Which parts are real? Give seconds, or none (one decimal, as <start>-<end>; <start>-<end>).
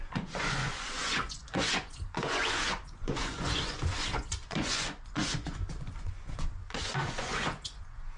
none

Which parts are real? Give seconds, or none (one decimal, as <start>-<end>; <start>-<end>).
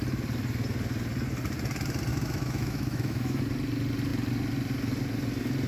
0.0-2.1; 3.4-5.7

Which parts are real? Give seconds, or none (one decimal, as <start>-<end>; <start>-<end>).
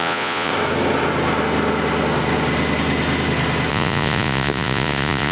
0.5-3.7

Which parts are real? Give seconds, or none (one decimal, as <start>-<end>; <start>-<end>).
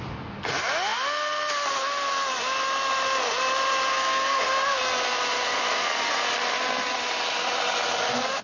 0.0-3.9; 4.8-8.4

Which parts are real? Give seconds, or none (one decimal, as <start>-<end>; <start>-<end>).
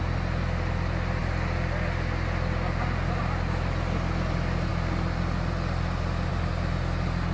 0.0-7.3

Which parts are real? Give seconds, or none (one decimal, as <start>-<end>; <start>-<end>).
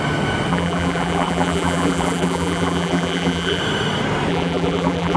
0.0-0.5; 3.6-4.3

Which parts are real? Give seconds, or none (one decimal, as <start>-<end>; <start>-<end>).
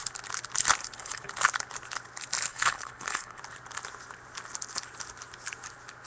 0.0-0.8; 1.3-2.5; 3.4-6.1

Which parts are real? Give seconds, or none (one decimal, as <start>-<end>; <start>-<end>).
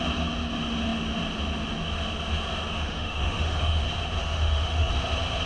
0.0-2.7; 3.8-4.2; 4.9-5.5